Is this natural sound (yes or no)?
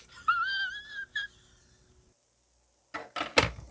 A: yes